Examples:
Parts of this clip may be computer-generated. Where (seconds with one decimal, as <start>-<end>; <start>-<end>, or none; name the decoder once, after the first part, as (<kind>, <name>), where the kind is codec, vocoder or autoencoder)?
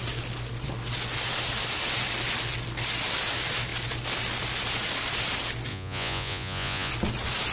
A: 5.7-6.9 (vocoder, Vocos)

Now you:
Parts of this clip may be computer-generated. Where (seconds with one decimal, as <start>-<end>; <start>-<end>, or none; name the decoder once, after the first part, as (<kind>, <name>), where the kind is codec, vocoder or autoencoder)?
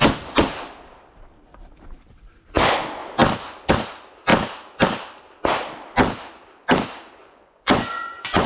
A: 7.2-8.5 (vocoder, Vocos)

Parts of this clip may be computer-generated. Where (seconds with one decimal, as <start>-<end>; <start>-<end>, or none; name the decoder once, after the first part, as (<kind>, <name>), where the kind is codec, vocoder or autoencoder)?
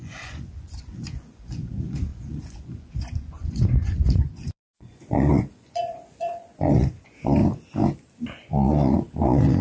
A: 0.0-7.4 (vocoder, Vocos); 8.3-9.6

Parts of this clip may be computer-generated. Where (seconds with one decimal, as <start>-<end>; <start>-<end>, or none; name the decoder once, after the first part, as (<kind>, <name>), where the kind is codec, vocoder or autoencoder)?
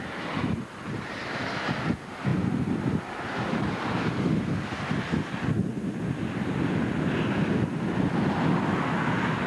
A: none